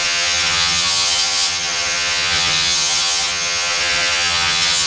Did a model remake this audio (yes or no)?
yes